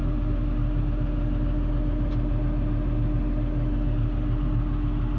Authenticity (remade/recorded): recorded